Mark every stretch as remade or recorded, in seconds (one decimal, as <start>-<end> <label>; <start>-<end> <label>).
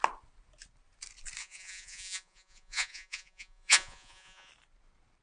0.0-1.4 recorded; 1.4-4.5 remade; 4.5-5.2 recorded